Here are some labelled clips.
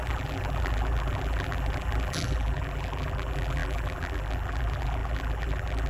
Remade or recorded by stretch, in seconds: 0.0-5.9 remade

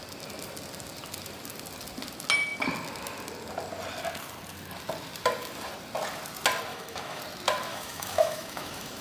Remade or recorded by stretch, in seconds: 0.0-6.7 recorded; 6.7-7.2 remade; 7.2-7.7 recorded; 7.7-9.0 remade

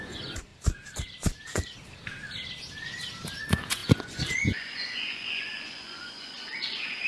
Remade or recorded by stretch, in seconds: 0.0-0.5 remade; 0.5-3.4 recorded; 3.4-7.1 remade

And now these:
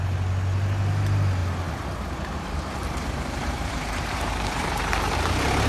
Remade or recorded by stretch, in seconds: 0.0-1.4 recorded; 1.4-4.8 remade; 4.8-5.7 recorded